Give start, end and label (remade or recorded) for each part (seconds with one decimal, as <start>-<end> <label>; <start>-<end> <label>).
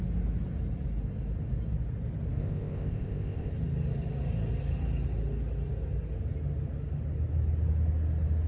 0.0-2.4 recorded; 2.4-3.5 remade; 3.5-8.5 recorded